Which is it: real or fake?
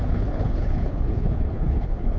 fake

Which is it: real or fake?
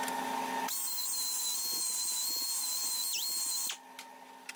real